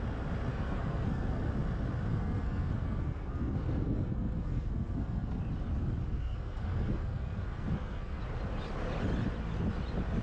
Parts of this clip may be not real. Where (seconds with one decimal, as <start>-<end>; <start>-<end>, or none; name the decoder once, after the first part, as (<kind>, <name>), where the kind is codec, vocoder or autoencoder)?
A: 0.5-1.5 (codec, SNAC); 2.1-5.4; 6.0-8.2